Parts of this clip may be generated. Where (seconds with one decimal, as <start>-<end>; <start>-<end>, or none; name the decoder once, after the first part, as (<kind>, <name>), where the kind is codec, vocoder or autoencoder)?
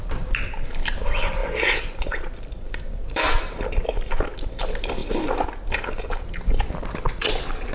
1.4-4.6 (vocoder, BigVGAN v2); 5.0-7.3